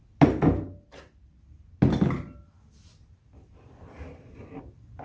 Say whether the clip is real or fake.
real